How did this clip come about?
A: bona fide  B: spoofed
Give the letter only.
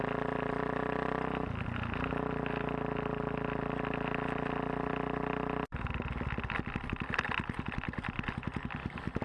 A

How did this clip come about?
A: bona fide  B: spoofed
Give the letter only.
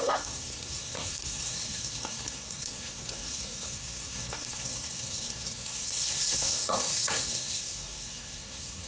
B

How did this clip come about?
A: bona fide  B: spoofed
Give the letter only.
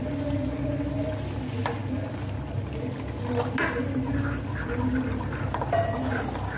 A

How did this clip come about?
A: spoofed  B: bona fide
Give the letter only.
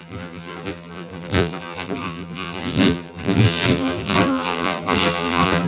A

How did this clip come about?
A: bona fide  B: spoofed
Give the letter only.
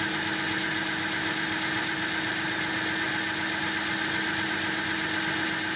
A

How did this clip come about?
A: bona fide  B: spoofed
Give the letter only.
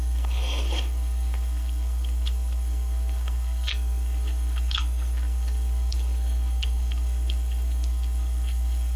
B